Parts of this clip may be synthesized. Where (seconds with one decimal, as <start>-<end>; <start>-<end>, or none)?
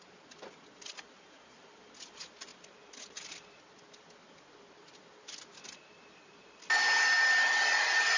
none